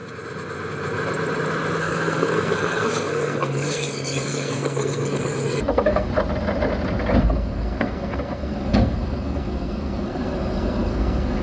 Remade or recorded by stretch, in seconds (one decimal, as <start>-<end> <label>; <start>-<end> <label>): 0.0-1.8 recorded; 1.8-6.1 remade; 6.1-7.2 recorded; 7.2-11.4 remade